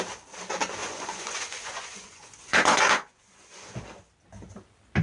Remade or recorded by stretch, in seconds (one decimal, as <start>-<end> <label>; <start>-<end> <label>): 0.0-0.8 recorded; 0.8-3.8 remade; 3.8-5.0 recorded